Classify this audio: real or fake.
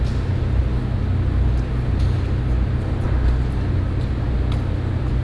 real